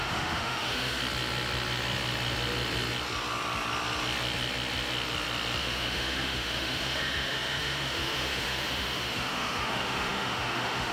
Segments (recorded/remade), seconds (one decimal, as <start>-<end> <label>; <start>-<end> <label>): 0.0-1.0 remade; 1.0-5.6 recorded; 5.6-10.9 remade